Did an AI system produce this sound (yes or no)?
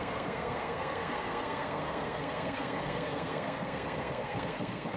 yes